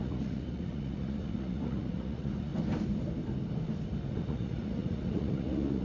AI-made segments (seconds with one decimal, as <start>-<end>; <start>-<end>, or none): 0.0-2.5; 4.1-5.8

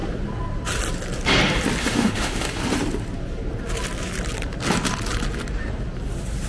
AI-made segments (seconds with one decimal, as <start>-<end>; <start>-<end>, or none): 1.8-2.6

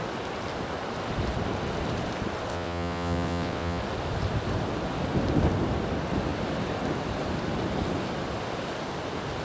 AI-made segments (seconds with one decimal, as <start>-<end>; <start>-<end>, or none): 2.5-3.8

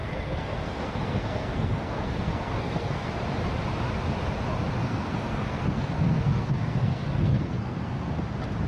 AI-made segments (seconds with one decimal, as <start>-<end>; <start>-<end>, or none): 0.0-3.1; 4.8-8.2

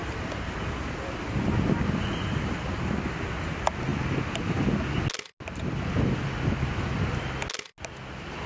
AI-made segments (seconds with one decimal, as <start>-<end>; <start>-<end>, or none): none